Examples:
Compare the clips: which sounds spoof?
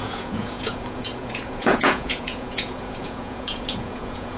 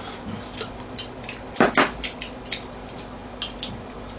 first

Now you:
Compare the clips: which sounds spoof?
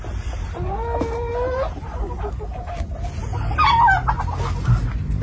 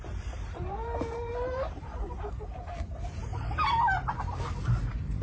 second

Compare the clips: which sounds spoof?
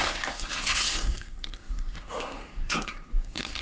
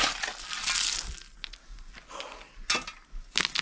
first